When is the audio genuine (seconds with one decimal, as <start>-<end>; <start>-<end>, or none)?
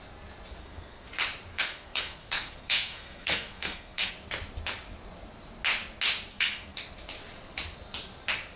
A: 0.0-0.6; 1.1-1.5; 4.1-6.3; 6.8-8.6